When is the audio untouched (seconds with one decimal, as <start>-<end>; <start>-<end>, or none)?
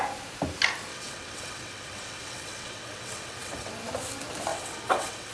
0.0-0.9; 3.7-4.5